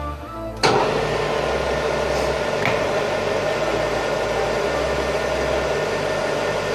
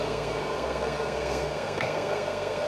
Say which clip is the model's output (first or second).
second